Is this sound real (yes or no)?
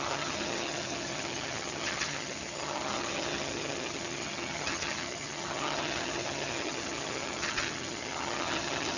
no